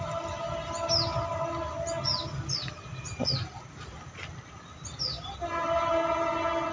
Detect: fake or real real